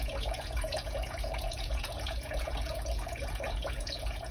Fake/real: fake